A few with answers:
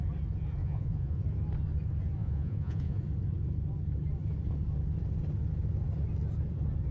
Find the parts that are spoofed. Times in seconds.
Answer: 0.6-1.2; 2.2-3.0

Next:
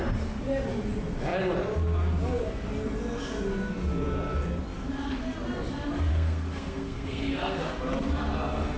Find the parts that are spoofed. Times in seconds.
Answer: 6.1-7.7

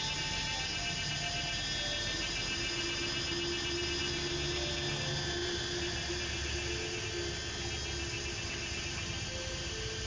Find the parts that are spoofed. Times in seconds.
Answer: none

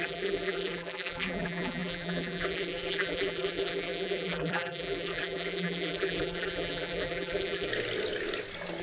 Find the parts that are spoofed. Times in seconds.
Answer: 0.0-7.7

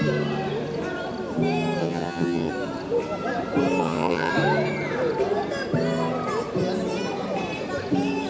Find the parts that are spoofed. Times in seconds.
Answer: 1.8-2.5; 3.8-4.3